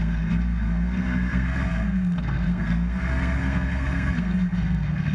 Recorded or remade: remade